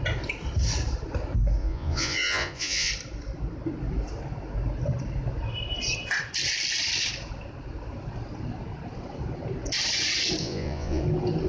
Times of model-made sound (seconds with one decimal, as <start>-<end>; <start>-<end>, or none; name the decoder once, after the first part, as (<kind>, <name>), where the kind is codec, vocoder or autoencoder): 1.6-2.9 (vocoder, Vocos); 10.4-11.0